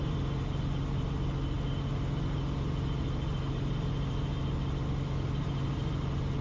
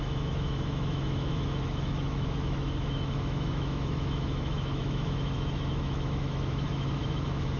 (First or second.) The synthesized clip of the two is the second